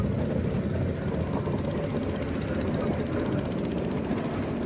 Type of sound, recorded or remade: recorded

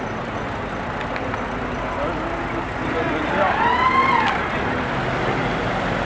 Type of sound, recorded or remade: recorded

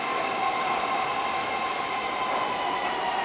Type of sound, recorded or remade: recorded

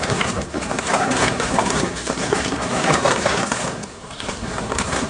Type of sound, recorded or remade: remade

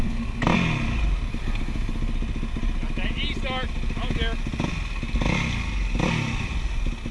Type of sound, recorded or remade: recorded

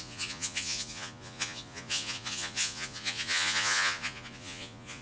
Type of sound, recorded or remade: remade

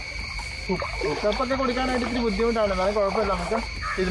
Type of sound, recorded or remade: recorded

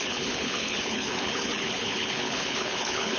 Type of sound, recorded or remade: remade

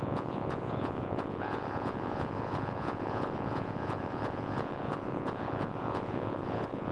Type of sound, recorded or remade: remade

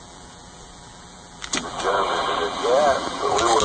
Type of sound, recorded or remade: remade